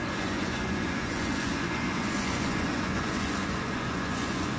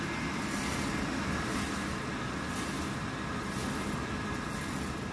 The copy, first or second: first